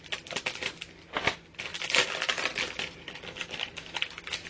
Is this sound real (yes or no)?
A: yes